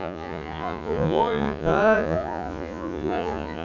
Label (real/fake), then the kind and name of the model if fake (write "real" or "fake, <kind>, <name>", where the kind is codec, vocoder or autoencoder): fake, vocoder, Vocos